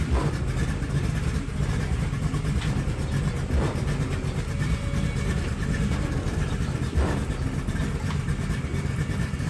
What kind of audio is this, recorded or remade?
recorded